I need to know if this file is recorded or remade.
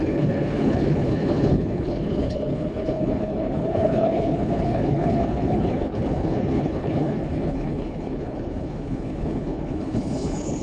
remade